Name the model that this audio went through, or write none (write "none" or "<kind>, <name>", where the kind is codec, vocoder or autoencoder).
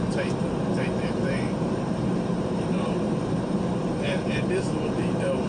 vocoder, BigVGAN v2